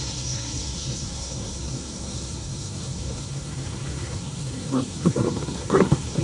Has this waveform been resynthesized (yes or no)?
yes